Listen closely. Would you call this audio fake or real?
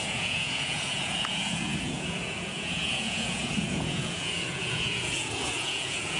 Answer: fake